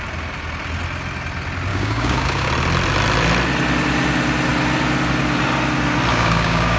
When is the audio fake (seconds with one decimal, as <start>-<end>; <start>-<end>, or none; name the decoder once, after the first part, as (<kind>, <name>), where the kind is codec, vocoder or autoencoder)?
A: 1.7-2.5 (codec, DAC); 6.1-6.8